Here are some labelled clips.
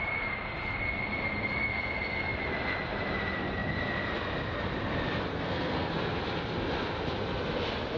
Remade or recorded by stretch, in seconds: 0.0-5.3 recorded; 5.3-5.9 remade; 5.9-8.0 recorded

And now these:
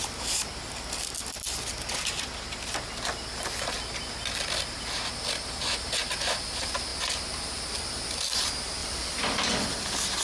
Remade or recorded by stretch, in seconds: 0.0-8.8 recorded; 8.8-9.5 remade; 9.5-10.2 recorded